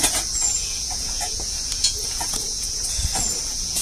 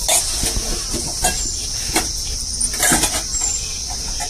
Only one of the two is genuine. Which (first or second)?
second